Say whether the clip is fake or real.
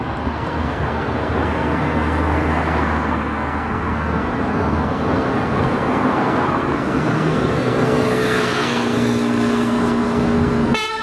fake